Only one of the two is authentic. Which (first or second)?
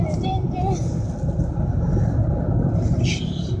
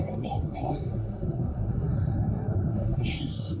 first